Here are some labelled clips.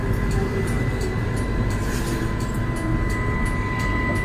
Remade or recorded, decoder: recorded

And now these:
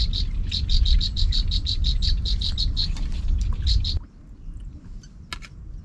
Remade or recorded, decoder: recorded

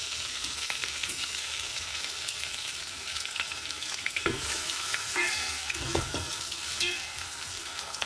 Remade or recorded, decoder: remade, codec, SNAC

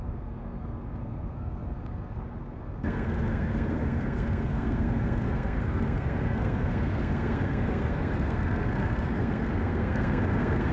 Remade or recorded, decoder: remade, codec, SNAC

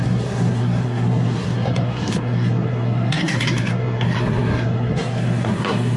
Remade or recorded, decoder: remade, codec, SNAC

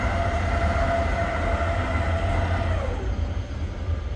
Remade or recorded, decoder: recorded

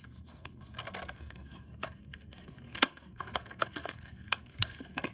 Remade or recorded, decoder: remade, codec, SNAC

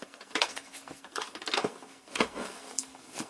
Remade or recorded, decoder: remade, codec, SNAC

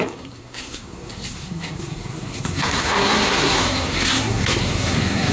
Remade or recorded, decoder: remade, codec, SNAC